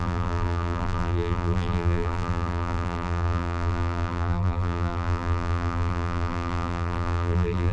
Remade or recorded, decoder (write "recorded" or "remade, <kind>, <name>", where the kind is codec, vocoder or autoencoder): remade, vocoder, BigVGAN v2